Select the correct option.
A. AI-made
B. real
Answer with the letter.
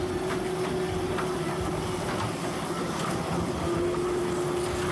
B